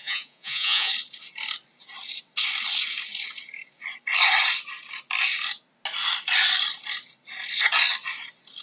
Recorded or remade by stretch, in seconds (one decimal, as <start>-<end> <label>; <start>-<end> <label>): 0.0-0.9 remade; 0.9-8.6 recorded